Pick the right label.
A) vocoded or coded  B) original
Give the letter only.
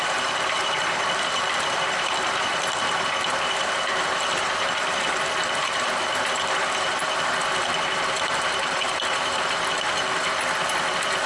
A